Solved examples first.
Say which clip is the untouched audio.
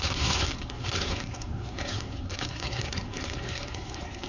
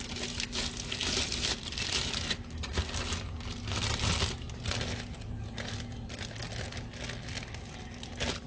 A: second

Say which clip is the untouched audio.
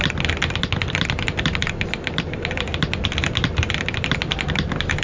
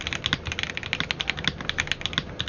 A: second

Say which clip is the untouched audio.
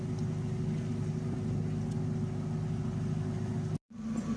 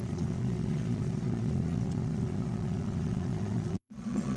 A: first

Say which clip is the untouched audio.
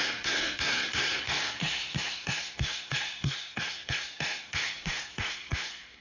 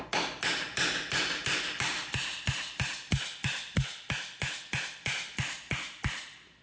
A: second